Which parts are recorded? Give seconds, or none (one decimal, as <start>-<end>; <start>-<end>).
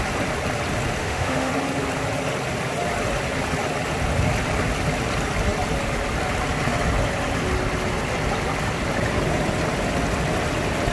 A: 0.0-1.0; 1.5-10.9